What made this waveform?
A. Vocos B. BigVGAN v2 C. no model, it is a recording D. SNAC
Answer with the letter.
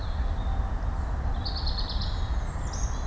C